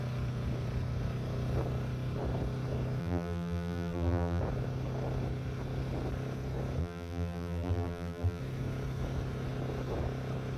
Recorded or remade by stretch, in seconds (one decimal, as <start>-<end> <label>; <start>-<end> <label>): 0.0-3.0 recorded; 3.0-4.4 remade; 4.4-6.8 recorded; 6.8-8.4 remade; 8.4-10.6 recorded

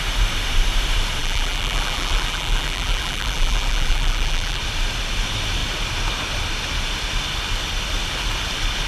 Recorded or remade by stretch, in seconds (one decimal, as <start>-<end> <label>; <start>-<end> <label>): 0.0-1.2 recorded; 1.2-4.6 remade; 4.6-8.9 recorded

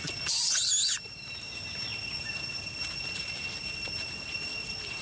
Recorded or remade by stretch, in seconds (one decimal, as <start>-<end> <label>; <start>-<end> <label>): 0.0-5.0 recorded